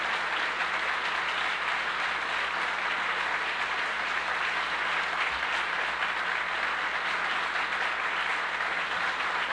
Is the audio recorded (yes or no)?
yes